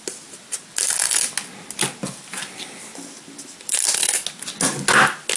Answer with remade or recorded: recorded